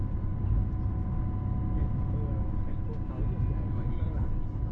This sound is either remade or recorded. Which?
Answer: recorded